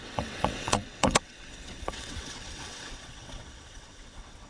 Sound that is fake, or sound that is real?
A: fake